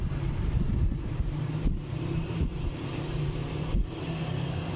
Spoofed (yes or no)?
yes